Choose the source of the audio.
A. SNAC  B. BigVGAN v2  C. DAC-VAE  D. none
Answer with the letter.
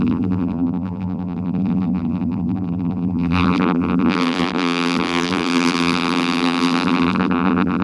B